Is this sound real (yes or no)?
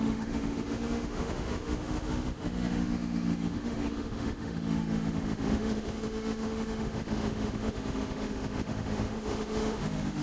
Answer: no